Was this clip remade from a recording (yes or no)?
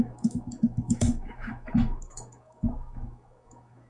yes